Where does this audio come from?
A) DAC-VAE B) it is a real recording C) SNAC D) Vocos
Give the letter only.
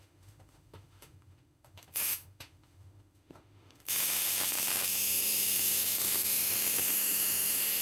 A